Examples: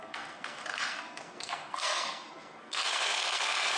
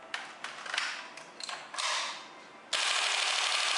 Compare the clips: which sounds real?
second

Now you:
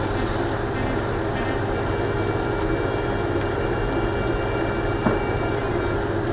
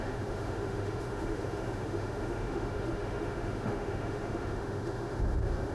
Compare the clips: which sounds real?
first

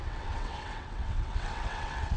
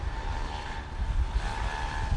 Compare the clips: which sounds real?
second